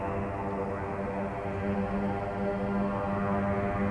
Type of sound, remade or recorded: recorded